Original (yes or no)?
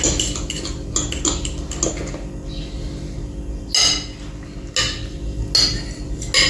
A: yes